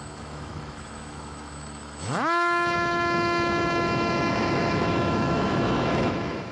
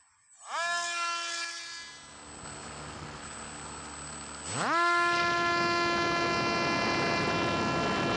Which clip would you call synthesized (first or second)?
first